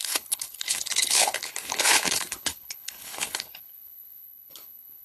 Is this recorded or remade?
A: remade